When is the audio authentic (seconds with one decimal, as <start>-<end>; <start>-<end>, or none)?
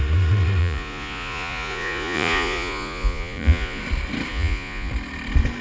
0.0-0.6; 3.8-4.3; 4.9-5.6